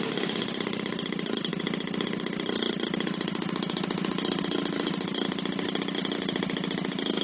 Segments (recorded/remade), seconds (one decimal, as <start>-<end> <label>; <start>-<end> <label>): 0.0-7.2 recorded